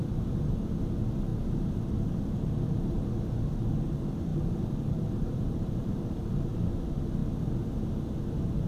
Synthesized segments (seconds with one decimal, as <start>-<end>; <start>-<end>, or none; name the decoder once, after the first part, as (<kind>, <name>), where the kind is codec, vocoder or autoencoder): 1.3-3.1 (vocoder, BigVGAN v2); 4.3-6.5